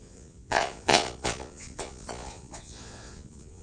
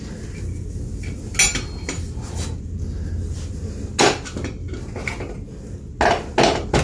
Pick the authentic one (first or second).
second